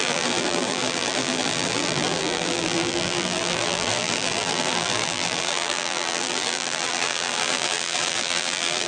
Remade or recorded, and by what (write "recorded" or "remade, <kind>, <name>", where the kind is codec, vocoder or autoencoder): remade, vocoder, BigVGAN v2